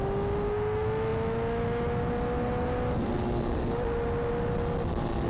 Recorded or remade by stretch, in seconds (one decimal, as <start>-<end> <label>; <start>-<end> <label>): 0.0-5.3 recorded